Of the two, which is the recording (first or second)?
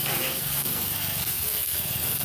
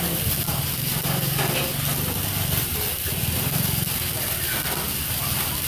second